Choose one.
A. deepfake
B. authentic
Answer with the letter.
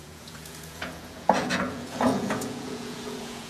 A